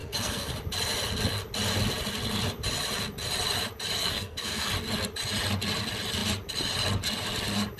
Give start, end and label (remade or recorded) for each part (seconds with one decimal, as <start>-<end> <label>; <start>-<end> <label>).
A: 0.0-0.5 remade; 0.5-4.0 recorded; 4.0-4.7 remade; 4.7-7.8 recorded